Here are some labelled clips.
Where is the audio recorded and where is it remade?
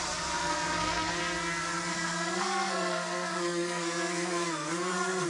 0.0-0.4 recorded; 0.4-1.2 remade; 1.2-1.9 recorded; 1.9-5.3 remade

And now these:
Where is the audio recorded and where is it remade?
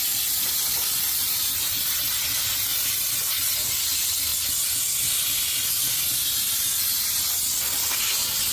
0.0-8.5 recorded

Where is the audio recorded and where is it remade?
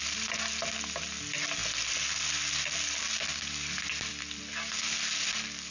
0.0-5.7 recorded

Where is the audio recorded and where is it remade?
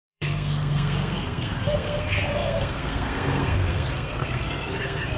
0.0-5.2 remade